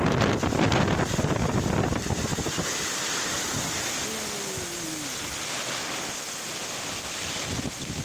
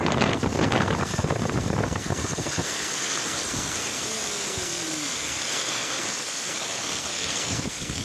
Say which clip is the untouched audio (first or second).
first